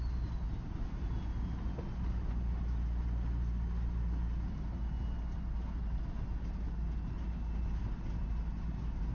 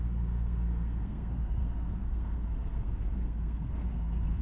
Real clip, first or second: first